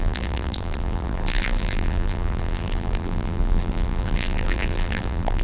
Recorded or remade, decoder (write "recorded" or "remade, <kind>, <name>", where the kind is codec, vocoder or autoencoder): remade, vocoder, BigVGAN v2